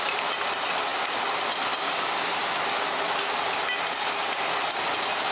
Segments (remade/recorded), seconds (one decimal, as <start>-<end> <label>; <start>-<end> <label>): 0.0-0.9 remade; 0.9-4.1 recorded; 4.1-5.3 remade